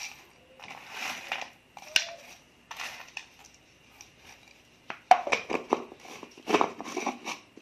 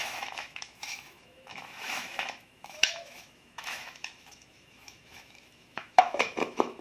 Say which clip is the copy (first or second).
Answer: second